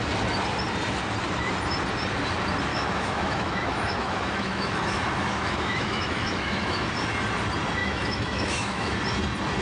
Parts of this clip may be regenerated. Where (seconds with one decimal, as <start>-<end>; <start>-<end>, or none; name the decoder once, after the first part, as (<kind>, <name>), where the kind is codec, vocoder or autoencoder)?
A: 2.7-6.9 (autoencoder, DAC-VAE); 7.8-9.0

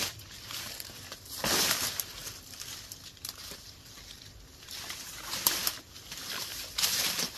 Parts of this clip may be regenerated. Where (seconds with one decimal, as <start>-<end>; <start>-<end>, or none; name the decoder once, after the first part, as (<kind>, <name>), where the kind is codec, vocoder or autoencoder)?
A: none

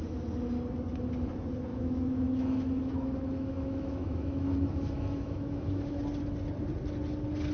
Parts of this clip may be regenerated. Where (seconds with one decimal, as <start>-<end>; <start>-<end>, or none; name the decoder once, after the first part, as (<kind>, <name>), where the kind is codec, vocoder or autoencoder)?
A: 1.7-6.0 (autoencoder, DAC-VAE)

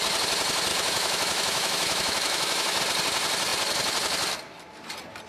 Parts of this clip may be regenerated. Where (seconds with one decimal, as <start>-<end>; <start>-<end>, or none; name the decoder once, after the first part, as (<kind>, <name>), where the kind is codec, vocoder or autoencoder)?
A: 0.7-2.8 (autoencoder, DAC-VAE)

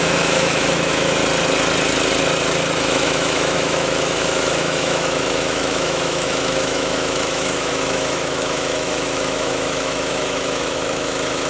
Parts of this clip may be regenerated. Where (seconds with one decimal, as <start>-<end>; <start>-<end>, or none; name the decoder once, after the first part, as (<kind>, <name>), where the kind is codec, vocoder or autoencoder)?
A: 0.0-1.2 (autoencoder, DAC-VAE); 2.8-11.5